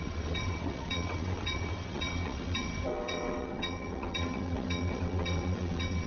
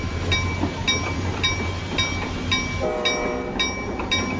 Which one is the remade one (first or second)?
first